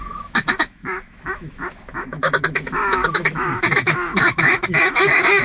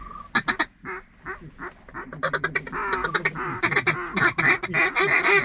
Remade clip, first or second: first